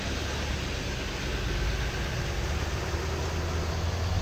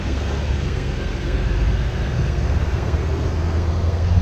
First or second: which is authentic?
first